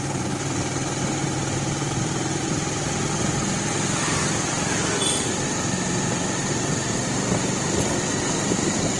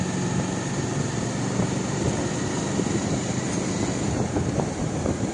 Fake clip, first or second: first